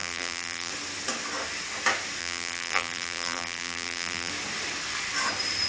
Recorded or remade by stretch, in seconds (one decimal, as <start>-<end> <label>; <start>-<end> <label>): 0.0-0.7 remade; 0.7-2.2 recorded; 2.2-4.3 remade; 4.3-5.7 recorded